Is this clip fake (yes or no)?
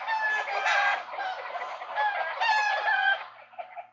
no